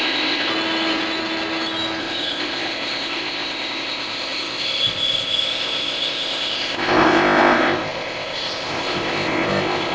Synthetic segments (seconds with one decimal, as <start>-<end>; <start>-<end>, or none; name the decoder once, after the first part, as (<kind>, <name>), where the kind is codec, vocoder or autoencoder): 0.0-0.5 (codec, ZipCodec); 2.0-9.9